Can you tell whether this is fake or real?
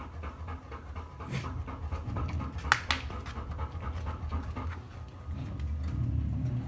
real